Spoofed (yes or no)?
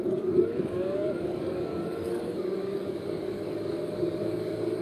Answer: yes